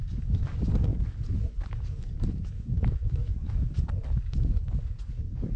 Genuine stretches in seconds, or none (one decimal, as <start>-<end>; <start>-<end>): 0.9-1.7